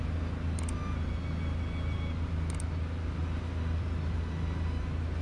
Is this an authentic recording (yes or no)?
yes